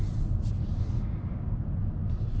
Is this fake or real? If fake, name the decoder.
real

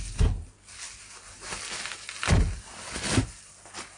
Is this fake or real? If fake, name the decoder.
real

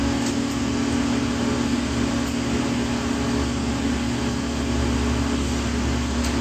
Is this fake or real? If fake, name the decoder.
real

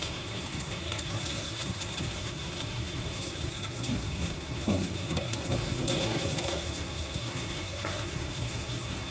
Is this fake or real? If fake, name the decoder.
fake, codec, SNAC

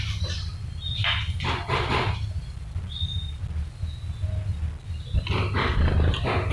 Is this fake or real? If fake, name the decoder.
real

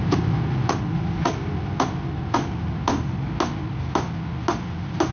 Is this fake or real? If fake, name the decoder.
real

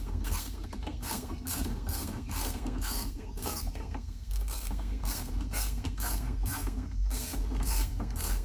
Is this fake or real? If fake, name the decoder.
fake, codec, SNAC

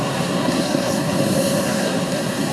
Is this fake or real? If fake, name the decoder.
fake, codec, SNAC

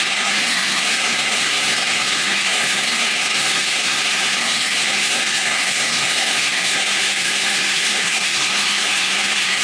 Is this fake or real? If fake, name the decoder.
fake, codec, SNAC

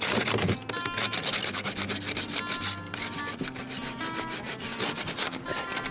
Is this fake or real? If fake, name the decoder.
real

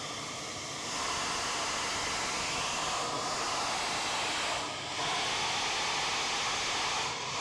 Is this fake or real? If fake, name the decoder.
real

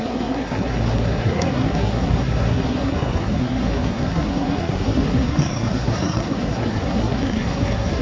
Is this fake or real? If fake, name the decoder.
fake, codec, SNAC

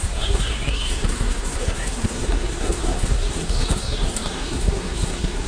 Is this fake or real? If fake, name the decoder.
fake, codec, SNAC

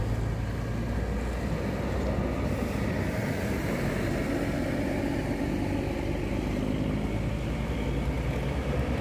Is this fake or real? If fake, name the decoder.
real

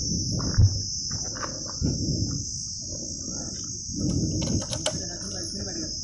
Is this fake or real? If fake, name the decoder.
real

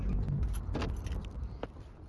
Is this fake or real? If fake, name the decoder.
real